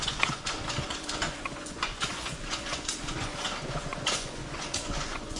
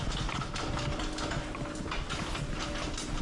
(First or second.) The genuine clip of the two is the second